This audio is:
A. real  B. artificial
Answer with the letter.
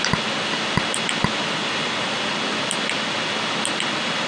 A